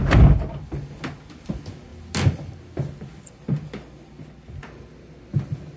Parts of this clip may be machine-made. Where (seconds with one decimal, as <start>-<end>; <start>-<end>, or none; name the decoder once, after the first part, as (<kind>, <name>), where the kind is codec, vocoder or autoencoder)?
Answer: none